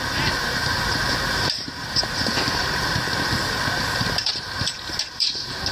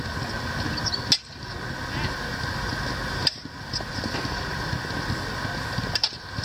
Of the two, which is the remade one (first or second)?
first